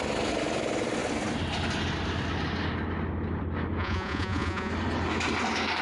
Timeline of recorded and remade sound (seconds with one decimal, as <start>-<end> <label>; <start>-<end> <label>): 0.0-3.8 recorded; 3.8-4.7 remade; 4.7-5.8 recorded